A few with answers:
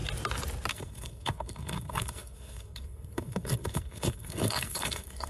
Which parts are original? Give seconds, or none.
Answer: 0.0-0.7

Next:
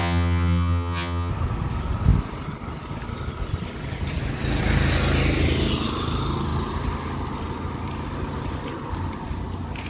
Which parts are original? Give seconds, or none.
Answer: 1.3-9.9

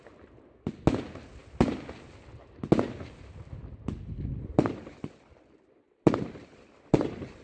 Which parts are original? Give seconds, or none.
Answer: 0.0-7.4

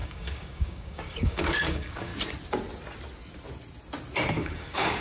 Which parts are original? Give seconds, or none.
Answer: 2.1-4.3

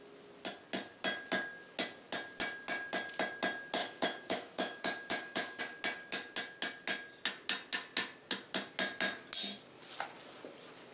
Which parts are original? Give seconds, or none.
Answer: 0.0-3.8; 5.6-10.9

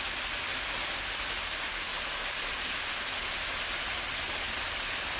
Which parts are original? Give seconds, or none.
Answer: 0.0-5.2

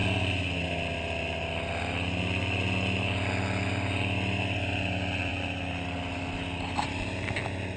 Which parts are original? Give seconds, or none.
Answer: 0.0-7.8

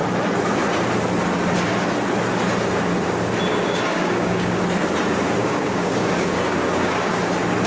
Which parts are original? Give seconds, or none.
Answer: 0.0-3.5; 4.6-5.4; 7.2-7.7